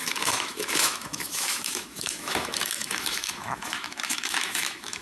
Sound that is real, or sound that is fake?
fake